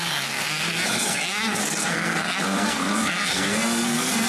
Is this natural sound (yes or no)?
no